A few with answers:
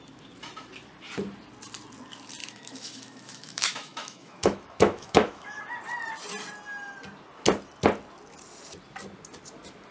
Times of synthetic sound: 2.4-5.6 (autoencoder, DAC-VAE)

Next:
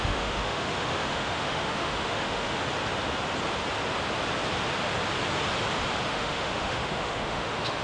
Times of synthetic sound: 0.0-2.6 (autoencoder, DAC-VAE); 6.0-7.8

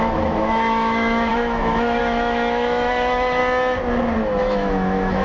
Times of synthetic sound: 0.0-3.4 (autoencoder, DAC-VAE); 4.4-5.2

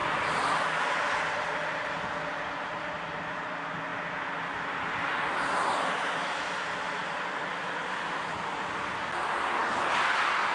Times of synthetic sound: none

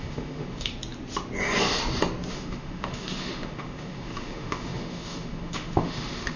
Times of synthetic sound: 0.0-0.7 (autoencoder, DAC-VAE); 2.3-6.4

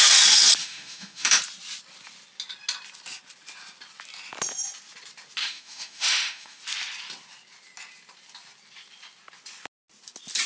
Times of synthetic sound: 0.6-1.4 (autoencoder, DAC-VAE); 5.4-6.6

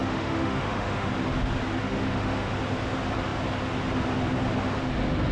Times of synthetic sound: 0.0-1.1 (autoencoder, DAC-VAE); 1.8-2.5

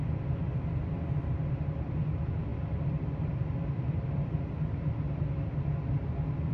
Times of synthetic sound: none